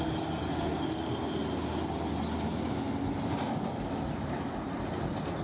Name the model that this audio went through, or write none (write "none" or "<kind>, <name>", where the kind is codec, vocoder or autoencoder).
none